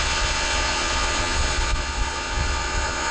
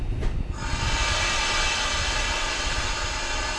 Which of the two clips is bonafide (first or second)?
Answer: second